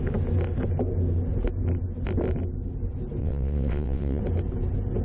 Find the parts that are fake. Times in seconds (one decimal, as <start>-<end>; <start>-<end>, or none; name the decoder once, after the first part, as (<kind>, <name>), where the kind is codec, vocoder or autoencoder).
3.2-4.2 (vocoder, WaveNeXt)